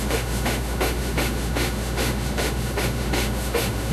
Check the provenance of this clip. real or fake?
fake